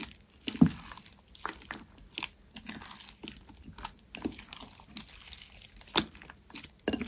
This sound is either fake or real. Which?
real